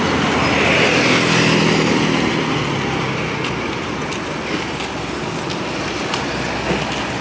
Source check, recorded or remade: recorded